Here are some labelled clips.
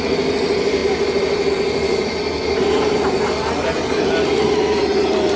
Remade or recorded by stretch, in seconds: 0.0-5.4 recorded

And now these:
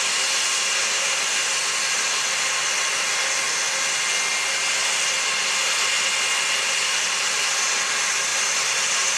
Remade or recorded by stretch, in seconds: 0.0-9.2 recorded

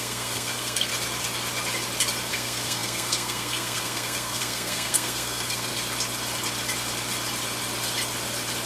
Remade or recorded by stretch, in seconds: 0.0-0.9 remade; 0.9-2.3 recorded; 2.3-5.7 remade; 5.7-8.7 recorded

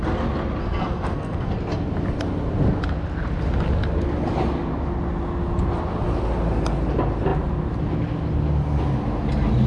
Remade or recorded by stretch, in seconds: 0.0-0.6 recorded; 0.6-1.5 remade; 1.5-9.7 recorded

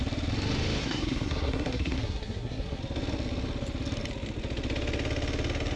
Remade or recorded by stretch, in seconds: 0.0-0.8 recorded; 0.8-2.8 remade; 2.8-5.8 recorded

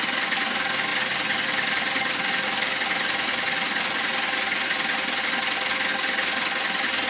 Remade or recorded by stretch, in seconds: 0.0-7.1 recorded